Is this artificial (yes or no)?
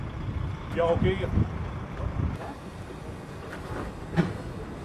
no